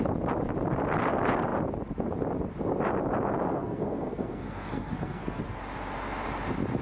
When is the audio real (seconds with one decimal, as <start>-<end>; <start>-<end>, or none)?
0.0-3.5; 5.4-6.8